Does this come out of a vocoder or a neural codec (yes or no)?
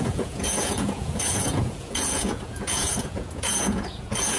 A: yes